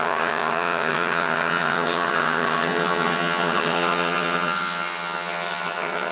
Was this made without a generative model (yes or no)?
no